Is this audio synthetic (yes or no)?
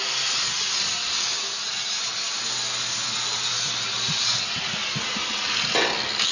no